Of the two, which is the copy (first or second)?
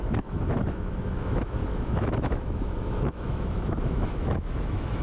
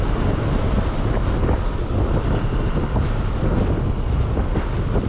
first